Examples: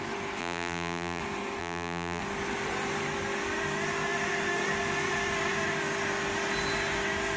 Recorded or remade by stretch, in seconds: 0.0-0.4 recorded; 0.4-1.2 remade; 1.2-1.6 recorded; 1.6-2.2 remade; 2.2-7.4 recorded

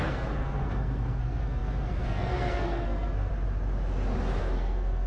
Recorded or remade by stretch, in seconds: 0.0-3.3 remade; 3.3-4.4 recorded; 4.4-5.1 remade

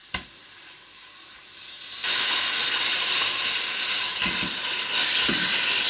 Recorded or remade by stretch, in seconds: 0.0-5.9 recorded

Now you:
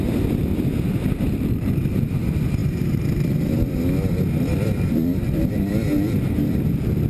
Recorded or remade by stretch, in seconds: 0.0-0.5 remade; 0.5-1.5 recorded; 1.5-7.1 remade

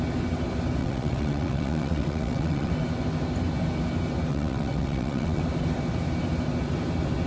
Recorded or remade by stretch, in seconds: 0.0-0.8 recorded; 0.8-2.7 remade; 2.7-4.3 recorded; 4.3-5.4 remade; 5.4-7.3 recorded

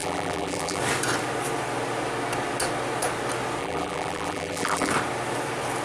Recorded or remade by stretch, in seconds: 0.0-0.8 remade; 0.8-3.6 recorded; 3.6-4.9 remade; 4.9-5.8 recorded